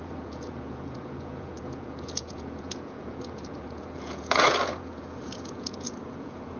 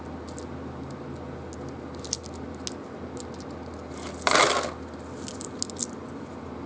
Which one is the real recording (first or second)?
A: second